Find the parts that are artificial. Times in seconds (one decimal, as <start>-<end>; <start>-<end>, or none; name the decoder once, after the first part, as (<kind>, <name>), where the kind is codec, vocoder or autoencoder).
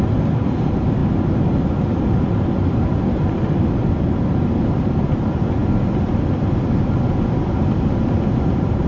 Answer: 5.6-7.4 (vocoder, BigVGAN v2)